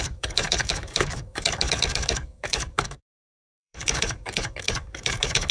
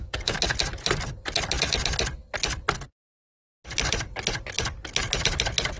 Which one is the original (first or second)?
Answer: second